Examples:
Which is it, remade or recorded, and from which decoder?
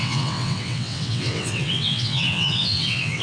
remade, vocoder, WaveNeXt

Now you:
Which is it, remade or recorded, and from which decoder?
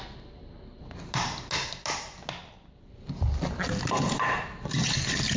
recorded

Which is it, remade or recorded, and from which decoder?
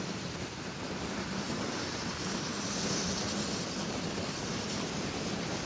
recorded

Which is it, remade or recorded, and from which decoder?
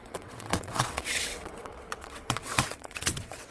remade, vocoder, WaveNeXt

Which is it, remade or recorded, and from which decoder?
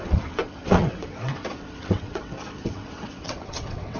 remade, vocoder, WaveNeXt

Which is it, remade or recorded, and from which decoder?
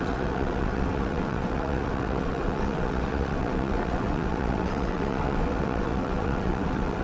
remade, vocoder, WaveNeXt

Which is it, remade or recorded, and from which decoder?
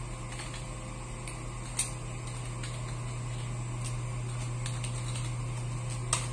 recorded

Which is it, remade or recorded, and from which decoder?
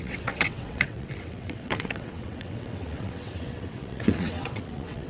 remade, vocoder, WaveNeXt